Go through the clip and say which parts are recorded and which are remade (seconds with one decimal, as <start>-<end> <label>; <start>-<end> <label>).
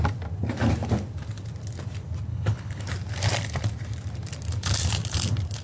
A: 0.0-2.3 recorded; 2.3-2.9 remade; 2.9-5.6 recorded